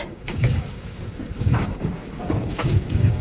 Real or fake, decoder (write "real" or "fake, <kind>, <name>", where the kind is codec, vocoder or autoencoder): fake, codec, DAC